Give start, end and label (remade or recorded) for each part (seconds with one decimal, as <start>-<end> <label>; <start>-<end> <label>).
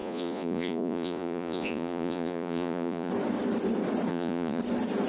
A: 0.0-3.1 remade; 3.1-4.1 recorded; 4.1-4.6 remade; 4.6-5.1 recorded